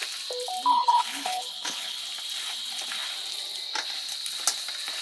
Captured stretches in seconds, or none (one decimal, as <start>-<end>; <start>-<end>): 0.0-0.7; 2.0-5.0